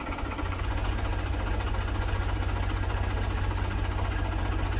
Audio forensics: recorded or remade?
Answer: remade